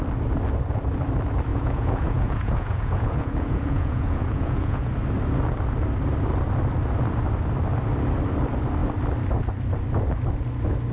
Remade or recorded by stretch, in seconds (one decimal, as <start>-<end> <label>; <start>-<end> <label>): 0.0-1.5 recorded; 1.5-4.9 remade; 4.9-10.9 recorded